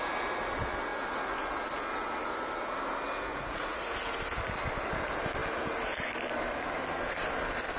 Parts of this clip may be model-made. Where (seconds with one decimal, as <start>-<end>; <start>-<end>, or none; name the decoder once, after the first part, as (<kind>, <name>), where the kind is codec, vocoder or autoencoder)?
3.3-3.9 (vocoder, Vocos)